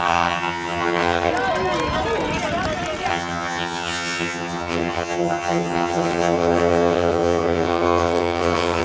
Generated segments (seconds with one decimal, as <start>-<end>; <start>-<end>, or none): 0.0-1.3; 3.1-8.8